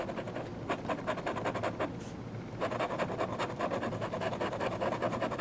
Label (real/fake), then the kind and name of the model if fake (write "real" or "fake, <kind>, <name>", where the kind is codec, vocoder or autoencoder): real